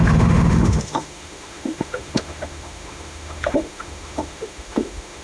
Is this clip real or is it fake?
fake